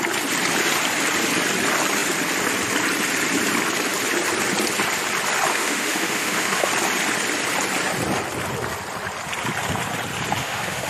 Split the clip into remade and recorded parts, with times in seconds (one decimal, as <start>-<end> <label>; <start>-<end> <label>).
0.0-5.5 recorded; 5.5-6.7 remade; 6.7-10.4 recorded; 10.4-10.9 remade

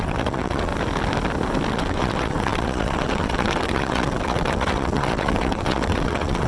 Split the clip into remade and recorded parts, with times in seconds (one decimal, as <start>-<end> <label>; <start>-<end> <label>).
0.0-0.7 remade; 0.7-1.7 recorded; 1.7-6.5 remade

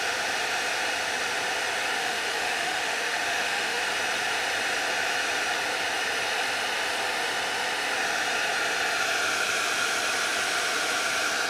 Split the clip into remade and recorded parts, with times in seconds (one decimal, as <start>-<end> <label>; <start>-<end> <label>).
0.0-2.0 recorded; 2.0-3.8 remade; 3.8-11.5 recorded

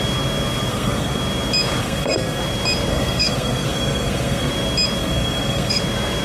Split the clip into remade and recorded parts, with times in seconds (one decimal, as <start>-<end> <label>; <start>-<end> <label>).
0.0-0.7 recorded; 0.7-1.2 remade; 1.2-1.8 recorded; 1.8-2.4 remade; 2.4-2.9 recorded; 2.9-4.5 remade; 4.5-5.0 recorded; 5.0-5.8 remade; 5.8-6.2 recorded

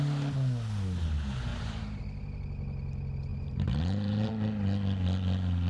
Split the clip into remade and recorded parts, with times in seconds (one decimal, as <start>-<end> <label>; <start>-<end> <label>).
0.0-1.5 recorded; 1.5-2.0 remade; 2.0-3.3 recorded; 3.3-4.3 remade; 4.3-5.7 recorded

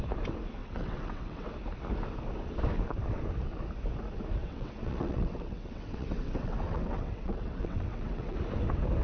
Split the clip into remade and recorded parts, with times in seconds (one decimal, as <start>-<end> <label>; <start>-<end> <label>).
0.0-0.6 recorded; 0.6-1.5 remade; 1.5-4.4 recorded; 4.4-8.4 remade; 8.4-9.0 recorded

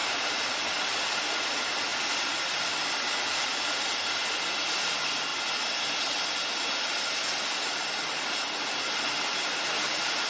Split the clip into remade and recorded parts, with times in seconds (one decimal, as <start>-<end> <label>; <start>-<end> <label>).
0.0-10.3 recorded